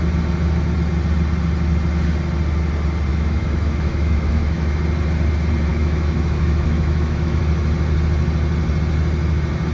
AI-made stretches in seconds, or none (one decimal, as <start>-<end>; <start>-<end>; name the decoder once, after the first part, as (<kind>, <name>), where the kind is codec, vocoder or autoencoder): 3.1-4.8 (autoencoder, DAC-VAE); 5.7-7.4